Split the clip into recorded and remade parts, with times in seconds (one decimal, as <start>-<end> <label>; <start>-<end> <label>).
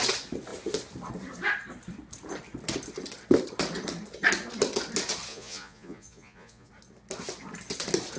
0.0-5.3 recorded; 5.3-6.7 remade; 6.7-8.2 recorded